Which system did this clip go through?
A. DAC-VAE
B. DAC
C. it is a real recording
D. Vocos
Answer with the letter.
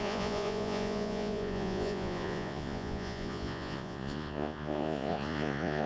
D